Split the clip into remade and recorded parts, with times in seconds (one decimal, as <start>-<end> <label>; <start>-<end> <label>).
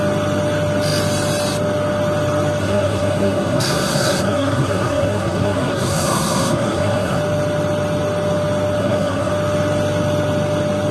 0.0-2.6 recorded; 2.6-7.2 remade; 7.2-8.8 recorded; 8.8-9.3 remade; 9.3-10.9 recorded